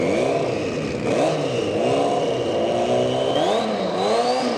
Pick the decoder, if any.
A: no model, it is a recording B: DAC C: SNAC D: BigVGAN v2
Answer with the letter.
A